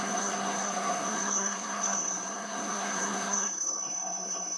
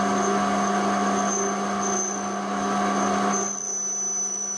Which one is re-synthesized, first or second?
first